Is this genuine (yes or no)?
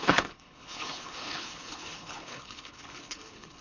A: no